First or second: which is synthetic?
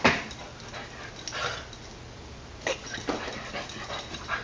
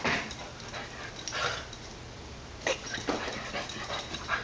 second